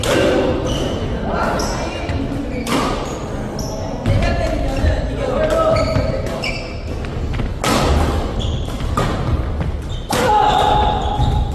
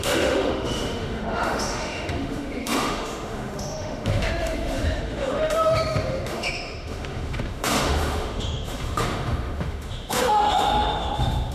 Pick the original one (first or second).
first